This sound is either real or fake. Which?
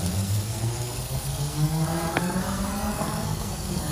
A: fake